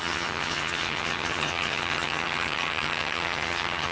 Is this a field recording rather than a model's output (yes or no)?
no